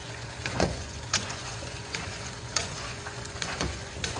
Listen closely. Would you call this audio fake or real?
fake